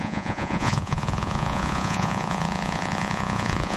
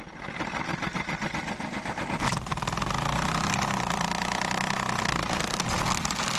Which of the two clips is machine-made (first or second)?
first